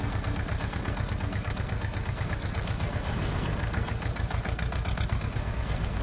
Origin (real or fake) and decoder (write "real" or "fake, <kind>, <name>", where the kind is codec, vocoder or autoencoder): fake, codec, SNAC